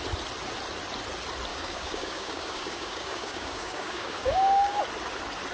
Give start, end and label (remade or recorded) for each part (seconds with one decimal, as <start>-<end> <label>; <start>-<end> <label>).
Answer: 0.0-1.5 recorded; 1.5-4.8 remade; 4.8-5.5 recorded

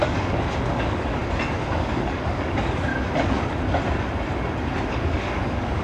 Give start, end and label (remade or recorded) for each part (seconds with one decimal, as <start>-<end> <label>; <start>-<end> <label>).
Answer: 0.0-1.2 remade; 1.2-1.7 recorded; 1.7-2.9 remade; 2.9-4.9 recorded; 4.9-5.8 remade

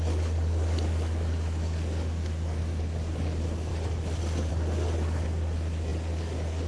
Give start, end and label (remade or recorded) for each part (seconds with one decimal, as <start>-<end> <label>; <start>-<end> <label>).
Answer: 0.0-3.7 remade; 3.7-4.5 recorded; 4.5-6.7 remade

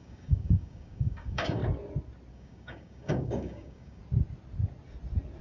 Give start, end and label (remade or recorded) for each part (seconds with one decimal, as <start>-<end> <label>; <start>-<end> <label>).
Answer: 0.0-1.6 remade; 1.6-2.3 recorded; 2.3-4.0 remade; 4.0-5.4 recorded

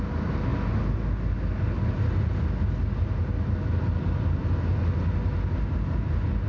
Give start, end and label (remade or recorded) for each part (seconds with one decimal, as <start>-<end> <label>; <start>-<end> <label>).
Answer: 0.0-6.5 recorded